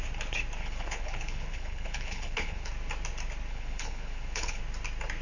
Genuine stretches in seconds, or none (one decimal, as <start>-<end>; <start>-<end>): 0.0-0.6; 2.7-3.5; 4.6-5.2